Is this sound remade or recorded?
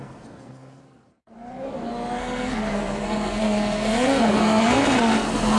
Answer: remade